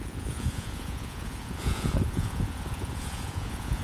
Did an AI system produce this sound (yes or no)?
yes